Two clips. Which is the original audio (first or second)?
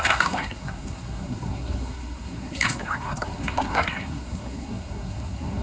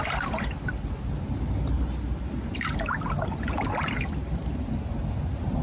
second